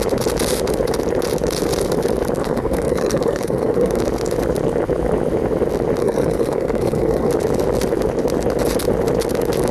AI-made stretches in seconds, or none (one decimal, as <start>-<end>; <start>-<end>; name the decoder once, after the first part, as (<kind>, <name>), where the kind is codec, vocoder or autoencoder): 2.4-4.0 (codec, SNAC); 6.0-7.3